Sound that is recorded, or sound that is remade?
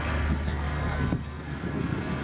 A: remade